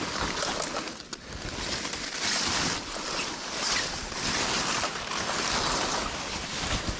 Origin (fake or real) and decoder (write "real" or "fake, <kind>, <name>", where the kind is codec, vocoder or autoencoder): real